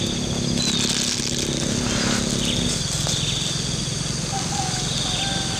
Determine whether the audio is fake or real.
real